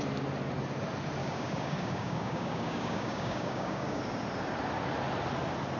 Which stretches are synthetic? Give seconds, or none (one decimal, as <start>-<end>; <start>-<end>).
1.2-4.0